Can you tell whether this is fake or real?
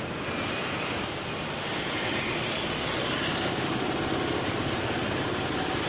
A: real